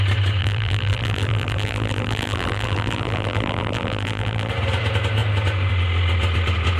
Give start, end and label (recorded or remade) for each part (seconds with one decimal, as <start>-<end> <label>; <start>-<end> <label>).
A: 0.0-0.4 recorded; 0.4-4.5 remade; 4.5-6.8 recorded